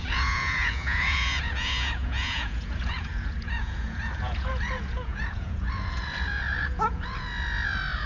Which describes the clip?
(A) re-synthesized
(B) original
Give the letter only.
A